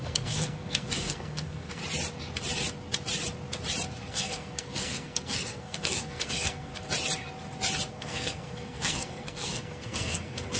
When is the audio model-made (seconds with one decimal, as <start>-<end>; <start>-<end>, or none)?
0.0-1.8; 4.1-6.7; 7.9-10.6